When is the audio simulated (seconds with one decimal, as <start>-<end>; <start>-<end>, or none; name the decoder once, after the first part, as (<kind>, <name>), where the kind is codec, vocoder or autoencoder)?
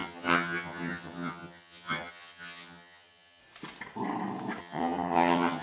0.0-3.4 (vocoder, HiFi-GAN); 4.6-5.6